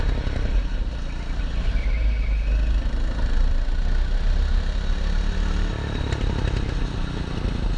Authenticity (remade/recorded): recorded